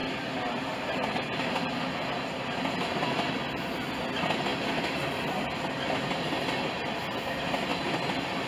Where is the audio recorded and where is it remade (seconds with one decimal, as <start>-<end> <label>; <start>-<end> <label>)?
0.0-8.5 recorded